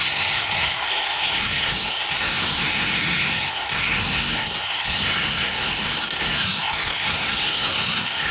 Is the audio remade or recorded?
remade